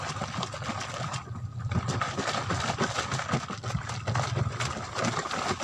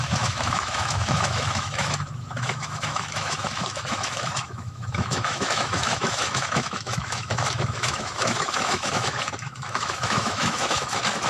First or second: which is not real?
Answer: second